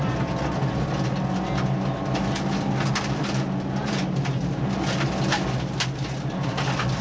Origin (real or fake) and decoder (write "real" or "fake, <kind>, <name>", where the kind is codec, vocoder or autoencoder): real